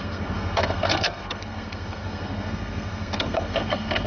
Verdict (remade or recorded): remade